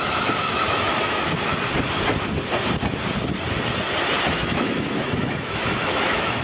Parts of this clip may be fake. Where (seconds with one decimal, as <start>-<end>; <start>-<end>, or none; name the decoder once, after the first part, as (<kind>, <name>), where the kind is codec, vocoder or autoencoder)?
0.0-1.5 (autoencoder, DAC-VAE); 4.3-6.4